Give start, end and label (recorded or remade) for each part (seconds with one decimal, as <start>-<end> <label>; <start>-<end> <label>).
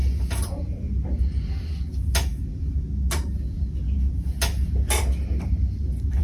0.0-6.2 recorded